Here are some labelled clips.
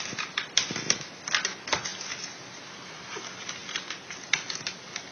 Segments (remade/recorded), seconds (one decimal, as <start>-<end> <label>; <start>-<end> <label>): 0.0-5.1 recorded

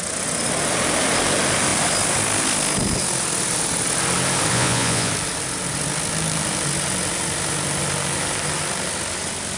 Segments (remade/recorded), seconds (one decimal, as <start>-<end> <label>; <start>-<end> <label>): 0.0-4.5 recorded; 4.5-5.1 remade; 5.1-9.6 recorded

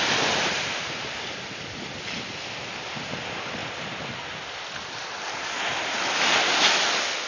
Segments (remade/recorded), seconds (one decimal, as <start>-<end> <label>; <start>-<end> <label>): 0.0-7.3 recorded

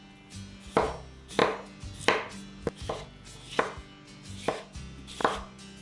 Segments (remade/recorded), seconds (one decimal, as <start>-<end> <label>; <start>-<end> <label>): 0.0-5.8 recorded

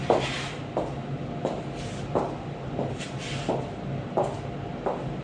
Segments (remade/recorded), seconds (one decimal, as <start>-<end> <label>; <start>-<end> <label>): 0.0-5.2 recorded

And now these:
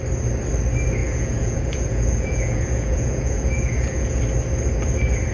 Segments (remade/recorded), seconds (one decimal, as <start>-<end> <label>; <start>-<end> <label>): 0.0-1.0 recorded; 1.0-4.2 remade; 4.2-5.3 recorded

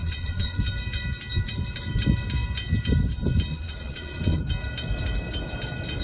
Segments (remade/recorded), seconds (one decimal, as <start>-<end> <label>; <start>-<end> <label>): 0.0-0.6 remade; 0.6-3.5 recorded; 3.5-4.4 remade; 4.4-6.0 recorded

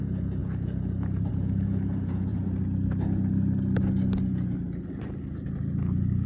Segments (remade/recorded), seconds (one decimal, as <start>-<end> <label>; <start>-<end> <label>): 0.0-2.4 remade; 2.4-6.3 recorded